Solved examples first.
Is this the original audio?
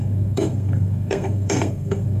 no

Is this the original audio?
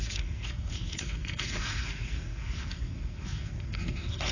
no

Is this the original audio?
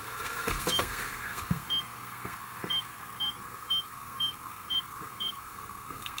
no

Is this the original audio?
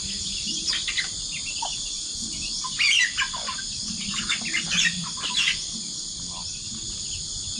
yes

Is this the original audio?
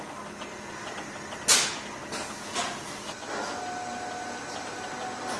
yes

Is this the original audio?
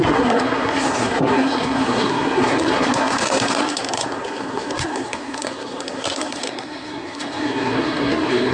no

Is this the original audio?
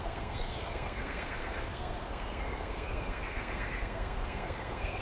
no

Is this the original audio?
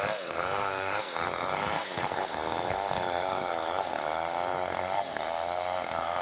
no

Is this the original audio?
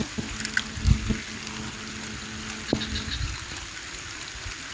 yes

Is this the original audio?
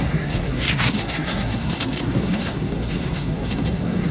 no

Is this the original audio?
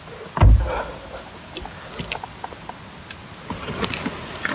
yes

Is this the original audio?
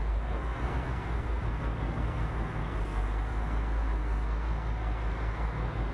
no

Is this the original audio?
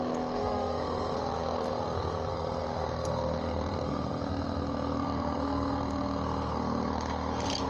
no